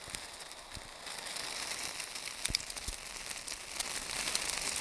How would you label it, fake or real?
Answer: real